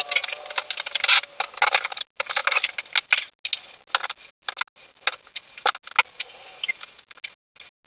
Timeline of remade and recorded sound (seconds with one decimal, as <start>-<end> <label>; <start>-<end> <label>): 0.0-7.9 recorded